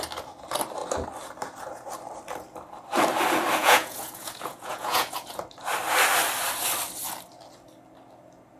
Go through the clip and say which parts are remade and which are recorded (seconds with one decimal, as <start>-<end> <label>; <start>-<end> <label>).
0.0-3.6 recorded; 3.6-5.4 remade; 5.4-8.6 recorded